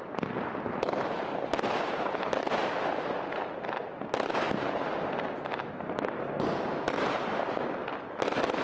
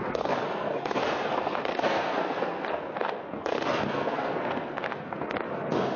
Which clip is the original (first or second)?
first